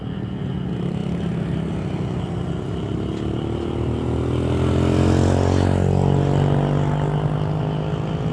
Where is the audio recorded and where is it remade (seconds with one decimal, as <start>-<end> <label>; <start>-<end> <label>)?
0.0-8.3 recorded